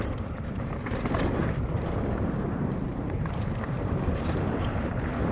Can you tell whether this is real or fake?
fake